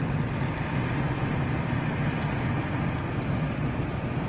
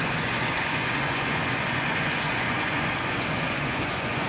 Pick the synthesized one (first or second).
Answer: second